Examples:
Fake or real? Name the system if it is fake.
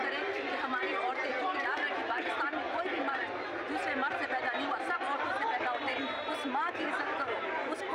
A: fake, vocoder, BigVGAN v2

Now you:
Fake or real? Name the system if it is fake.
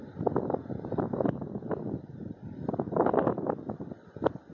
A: real